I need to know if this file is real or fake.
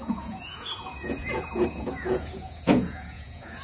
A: fake